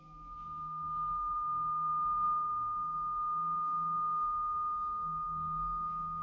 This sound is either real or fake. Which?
fake